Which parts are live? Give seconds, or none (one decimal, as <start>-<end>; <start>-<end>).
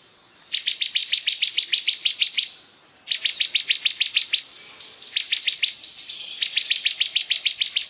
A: 0.0-1.0; 2.9-7.9